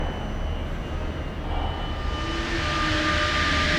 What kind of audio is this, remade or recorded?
recorded